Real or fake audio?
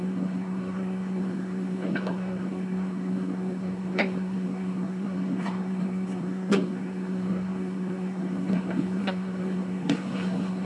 fake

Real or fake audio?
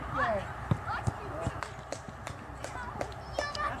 real